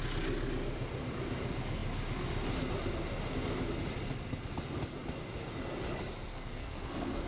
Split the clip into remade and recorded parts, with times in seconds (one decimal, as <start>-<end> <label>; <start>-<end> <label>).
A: 0.0-6.3 recorded; 6.3-7.3 remade